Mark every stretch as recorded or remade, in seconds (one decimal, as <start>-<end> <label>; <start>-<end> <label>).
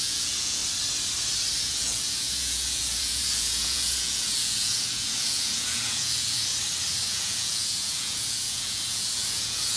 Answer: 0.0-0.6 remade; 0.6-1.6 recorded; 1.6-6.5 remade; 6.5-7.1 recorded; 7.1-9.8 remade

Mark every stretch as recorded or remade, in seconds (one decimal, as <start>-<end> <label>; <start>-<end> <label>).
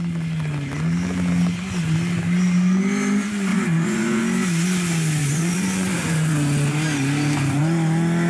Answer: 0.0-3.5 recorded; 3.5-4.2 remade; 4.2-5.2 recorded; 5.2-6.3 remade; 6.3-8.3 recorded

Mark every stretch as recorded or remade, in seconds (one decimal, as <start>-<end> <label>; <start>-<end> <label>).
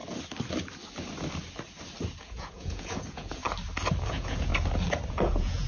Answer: 0.0-2.2 recorded; 2.2-3.4 remade; 3.4-4.1 recorded; 4.1-4.5 remade; 4.5-5.1 recorded; 5.1-5.7 remade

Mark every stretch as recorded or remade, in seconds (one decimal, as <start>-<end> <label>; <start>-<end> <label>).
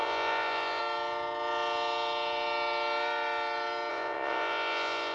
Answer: 0.0-0.8 remade; 0.8-3.9 recorded; 3.9-5.1 remade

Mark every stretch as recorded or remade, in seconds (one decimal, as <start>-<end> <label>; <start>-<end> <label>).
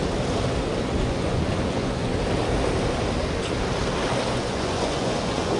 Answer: 0.0-0.8 recorded; 0.8-2.1 remade; 2.1-4.3 recorded; 4.3-5.6 remade